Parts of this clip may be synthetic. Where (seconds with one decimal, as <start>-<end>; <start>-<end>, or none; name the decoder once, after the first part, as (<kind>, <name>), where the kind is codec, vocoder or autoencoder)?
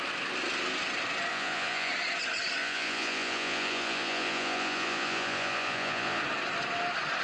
1.3-1.9 (vocoder, Vocos); 2.6-6.2